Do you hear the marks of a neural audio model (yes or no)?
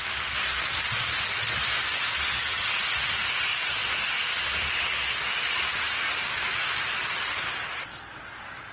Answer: no